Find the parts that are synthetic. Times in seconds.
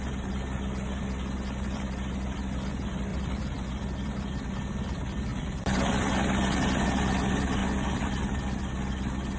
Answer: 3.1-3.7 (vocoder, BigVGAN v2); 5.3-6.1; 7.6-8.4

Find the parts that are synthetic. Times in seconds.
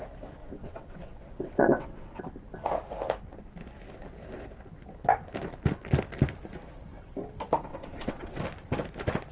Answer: 0.4-2.2 (vocoder, WaveNeXt); 7.7-8.4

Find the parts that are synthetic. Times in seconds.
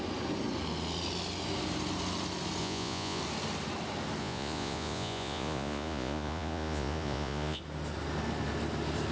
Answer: 2.6-3.2 (vocoder, Vocos); 4.2-7.6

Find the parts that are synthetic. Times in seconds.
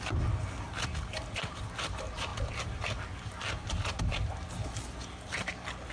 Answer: none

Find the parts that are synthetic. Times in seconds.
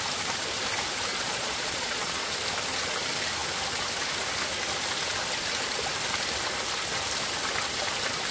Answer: 1.1-2.2 (vocoder, Vocos)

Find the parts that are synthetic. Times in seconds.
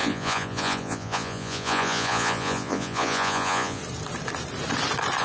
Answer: 0.0-3.8 (vocoder, Vocos)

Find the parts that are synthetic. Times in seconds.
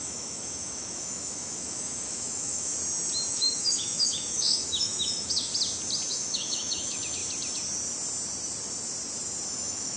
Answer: 0.0-2.7 (autoencoder, DAC-VAE); 3.3-5.5; 6.1-7.2; 9.5-10.0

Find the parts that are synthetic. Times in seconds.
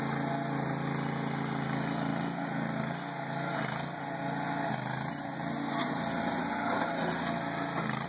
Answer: none